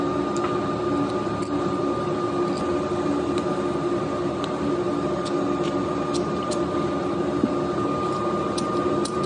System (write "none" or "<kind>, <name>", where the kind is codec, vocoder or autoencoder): none